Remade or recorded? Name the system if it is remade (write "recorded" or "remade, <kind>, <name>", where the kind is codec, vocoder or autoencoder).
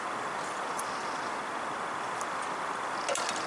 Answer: recorded